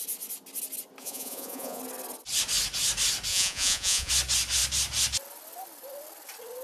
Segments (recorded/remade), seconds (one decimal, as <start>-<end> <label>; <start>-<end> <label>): 0.0-1.0 recorded; 1.0-1.8 remade; 1.8-3.3 recorded; 3.3-4.1 remade; 4.1-6.6 recorded